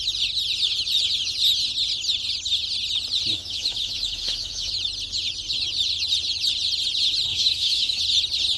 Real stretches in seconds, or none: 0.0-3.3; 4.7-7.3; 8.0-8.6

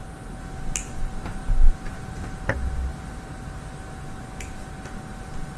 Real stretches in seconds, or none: 0.0-5.6

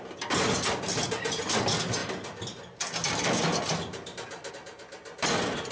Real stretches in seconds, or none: 0.0-5.7

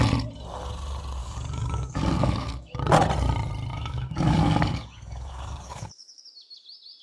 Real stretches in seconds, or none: 0.0-1.2; 2.8-3.7; 6.2-7.0

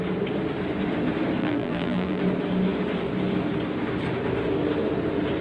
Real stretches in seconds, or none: 0.0-1.4; 2.2-5.4